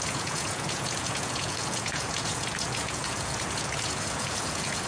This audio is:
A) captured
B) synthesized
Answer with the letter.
B